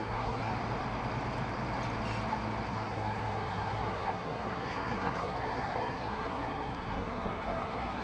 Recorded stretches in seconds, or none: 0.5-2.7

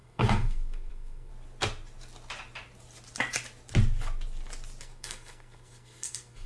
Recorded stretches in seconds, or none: 1.3-4.8

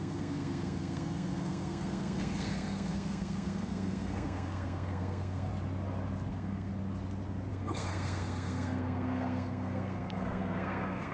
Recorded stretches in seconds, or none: 5.5-6.3; 6.7-7.5

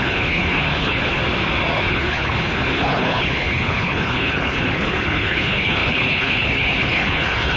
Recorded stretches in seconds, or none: 1.2-1.9